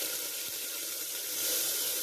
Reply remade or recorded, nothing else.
remade